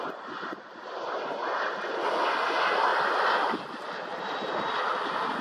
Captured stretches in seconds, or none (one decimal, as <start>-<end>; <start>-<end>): 0.0-2.9; 3.9-5.4